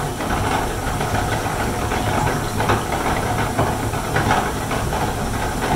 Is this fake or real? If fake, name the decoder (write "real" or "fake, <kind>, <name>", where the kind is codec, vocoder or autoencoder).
real